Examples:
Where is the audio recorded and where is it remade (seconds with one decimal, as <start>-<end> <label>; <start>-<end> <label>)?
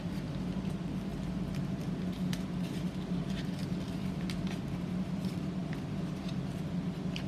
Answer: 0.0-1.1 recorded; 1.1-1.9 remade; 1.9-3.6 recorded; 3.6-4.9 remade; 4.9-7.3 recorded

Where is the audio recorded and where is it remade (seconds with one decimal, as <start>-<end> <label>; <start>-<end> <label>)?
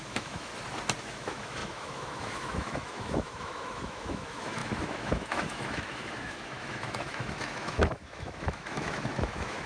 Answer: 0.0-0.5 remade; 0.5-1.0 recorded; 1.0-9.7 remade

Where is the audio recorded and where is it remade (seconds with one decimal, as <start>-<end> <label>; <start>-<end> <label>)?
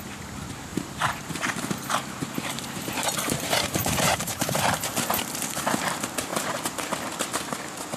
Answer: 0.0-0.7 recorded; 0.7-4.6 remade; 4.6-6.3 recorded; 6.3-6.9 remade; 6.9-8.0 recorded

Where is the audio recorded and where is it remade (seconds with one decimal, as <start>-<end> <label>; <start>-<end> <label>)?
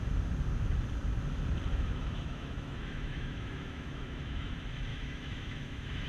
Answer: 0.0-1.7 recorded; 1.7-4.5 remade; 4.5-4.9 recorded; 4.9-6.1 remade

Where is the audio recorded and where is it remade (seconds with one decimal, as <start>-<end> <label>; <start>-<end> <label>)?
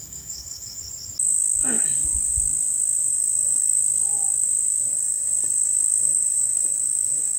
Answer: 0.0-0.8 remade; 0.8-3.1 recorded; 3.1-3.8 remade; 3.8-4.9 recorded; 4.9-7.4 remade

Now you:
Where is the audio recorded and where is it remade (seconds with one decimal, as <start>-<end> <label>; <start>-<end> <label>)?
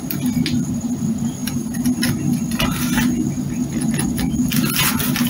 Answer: 0.0-5.3 recorded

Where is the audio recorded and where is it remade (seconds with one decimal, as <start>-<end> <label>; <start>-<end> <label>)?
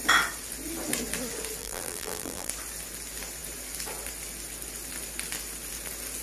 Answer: 0.0-1.6 recorded; 1.6-2.5 remade; 2.5-6.2 recorded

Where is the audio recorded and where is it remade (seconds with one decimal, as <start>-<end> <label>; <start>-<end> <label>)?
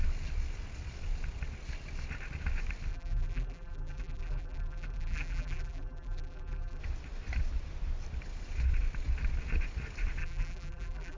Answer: 0.0-2.9 recorded; 2.9-6.8 remade; 6.8-10.2 recorded; 10.2-11.2 remade